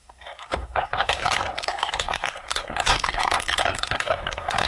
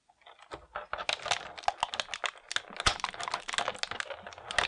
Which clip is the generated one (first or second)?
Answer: first